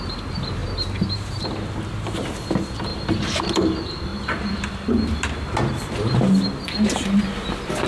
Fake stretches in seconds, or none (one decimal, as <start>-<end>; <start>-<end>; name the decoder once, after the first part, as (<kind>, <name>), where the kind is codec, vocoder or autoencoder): 0.6-1.4 (vocoder, BigVGAN v2); 2.9-3.4